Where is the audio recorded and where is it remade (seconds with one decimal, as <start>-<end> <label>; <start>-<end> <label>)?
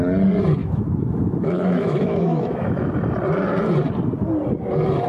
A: 0.0-0.6 recorded; 0.6-2.9 remade; 2.9-5.1 recorded